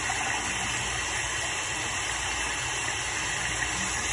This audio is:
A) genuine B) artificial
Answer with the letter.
A